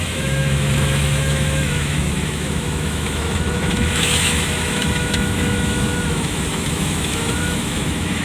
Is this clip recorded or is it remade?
remade